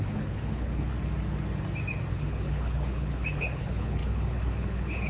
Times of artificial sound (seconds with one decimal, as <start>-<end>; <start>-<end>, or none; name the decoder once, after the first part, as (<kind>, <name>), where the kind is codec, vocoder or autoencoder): 0.0-0.9 (codec, HILCodec); 2.1-5.1